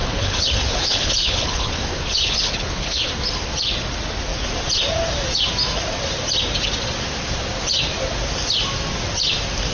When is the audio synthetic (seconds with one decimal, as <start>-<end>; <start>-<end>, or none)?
0.0-3.1